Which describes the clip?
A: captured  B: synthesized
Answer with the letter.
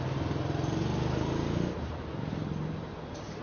A